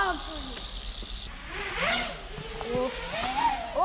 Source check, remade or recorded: recorded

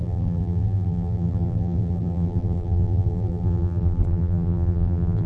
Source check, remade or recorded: remade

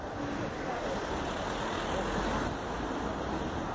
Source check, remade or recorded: recorded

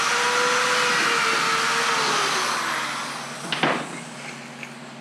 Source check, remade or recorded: recorded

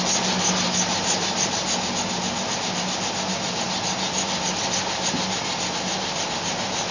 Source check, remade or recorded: recorded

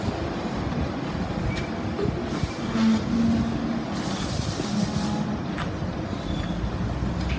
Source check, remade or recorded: recorded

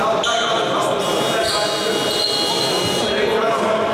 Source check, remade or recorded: recorded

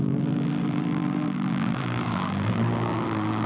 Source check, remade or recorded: remade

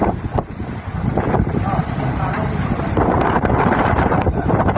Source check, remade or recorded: remade